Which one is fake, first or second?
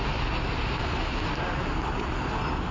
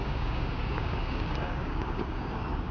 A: second